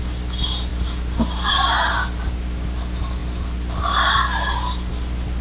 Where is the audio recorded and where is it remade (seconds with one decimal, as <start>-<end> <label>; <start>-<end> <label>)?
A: 0.0-5.4 recorded